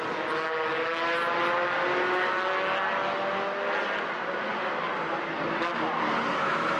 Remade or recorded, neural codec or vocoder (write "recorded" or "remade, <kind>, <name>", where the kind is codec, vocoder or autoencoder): recorded